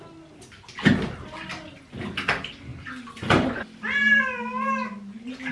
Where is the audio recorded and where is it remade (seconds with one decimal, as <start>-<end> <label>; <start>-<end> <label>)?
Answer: 0.0-5.5 recorded